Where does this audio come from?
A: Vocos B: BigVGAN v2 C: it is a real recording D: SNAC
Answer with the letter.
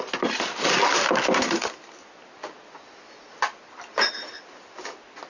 C